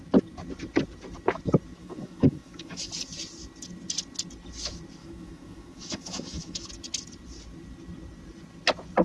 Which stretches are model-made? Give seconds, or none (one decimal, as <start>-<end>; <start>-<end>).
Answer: 1.8-2.9; 5.0-6.7